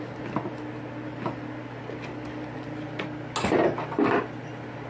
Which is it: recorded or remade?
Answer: recorded